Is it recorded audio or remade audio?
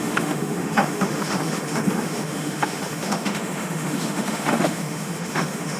remade